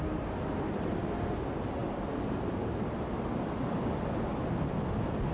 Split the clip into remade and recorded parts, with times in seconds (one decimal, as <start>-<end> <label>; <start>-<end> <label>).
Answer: 0.0-5.3 recorded